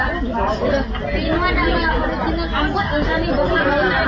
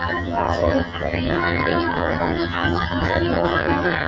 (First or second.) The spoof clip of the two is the second